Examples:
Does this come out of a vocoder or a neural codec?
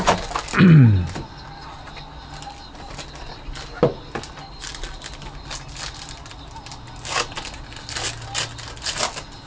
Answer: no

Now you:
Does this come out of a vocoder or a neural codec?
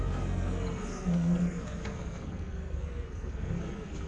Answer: yes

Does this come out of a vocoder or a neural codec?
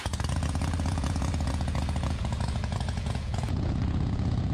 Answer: yes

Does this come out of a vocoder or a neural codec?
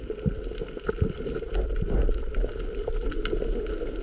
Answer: no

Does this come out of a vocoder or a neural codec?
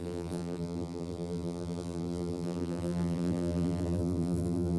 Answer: yes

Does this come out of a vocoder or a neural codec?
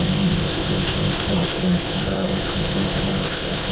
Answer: yes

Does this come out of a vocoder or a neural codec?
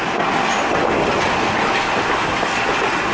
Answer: no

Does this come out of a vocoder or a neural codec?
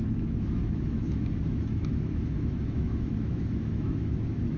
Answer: yes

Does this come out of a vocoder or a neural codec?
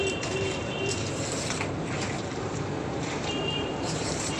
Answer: yes